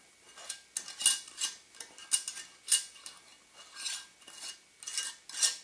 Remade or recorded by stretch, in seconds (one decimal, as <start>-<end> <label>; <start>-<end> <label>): 0.0-5.6 recorded

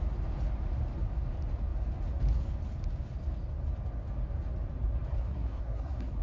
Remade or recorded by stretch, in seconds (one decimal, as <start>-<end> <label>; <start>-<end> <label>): 0.0-5.1 recorded; 5.1-6.2 remade